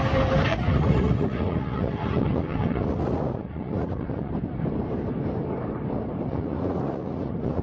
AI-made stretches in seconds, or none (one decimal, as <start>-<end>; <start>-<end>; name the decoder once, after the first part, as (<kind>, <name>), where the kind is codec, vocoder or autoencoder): 0.5-4.3 (vocoder, Vocos); 6.3-7.6